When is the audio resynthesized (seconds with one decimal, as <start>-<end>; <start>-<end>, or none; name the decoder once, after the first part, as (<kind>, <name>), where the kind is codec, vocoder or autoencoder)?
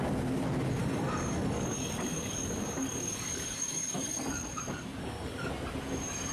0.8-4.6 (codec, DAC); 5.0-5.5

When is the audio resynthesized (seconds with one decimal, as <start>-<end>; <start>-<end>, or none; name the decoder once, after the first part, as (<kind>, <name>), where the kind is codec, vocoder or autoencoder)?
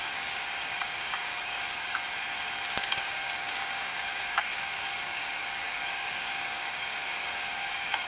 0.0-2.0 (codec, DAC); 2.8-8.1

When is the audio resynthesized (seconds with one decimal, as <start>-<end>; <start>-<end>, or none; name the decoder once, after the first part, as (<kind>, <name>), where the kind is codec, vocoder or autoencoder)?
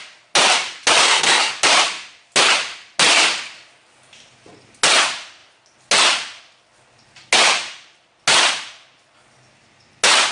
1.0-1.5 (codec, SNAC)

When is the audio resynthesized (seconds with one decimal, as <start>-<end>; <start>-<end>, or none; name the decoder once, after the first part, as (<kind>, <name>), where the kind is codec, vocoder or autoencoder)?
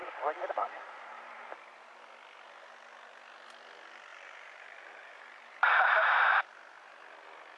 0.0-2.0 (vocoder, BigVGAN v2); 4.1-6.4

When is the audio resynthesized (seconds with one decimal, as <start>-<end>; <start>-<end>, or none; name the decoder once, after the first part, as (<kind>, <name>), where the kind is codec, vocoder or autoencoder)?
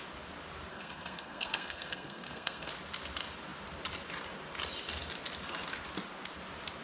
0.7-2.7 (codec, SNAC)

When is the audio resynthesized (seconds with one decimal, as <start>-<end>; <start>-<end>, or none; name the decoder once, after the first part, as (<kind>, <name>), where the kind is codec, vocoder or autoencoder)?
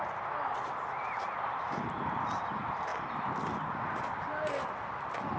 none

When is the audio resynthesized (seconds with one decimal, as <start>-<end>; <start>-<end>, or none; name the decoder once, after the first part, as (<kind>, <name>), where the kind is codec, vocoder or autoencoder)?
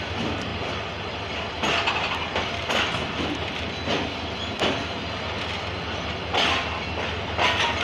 none